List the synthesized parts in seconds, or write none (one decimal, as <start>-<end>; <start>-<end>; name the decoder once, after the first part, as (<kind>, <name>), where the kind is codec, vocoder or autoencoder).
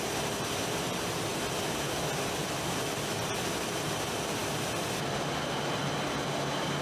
none